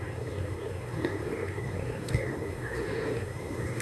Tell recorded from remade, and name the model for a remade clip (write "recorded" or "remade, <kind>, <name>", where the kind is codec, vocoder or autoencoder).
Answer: remade, codec, SNAC